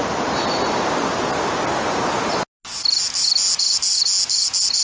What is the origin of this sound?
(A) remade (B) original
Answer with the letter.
B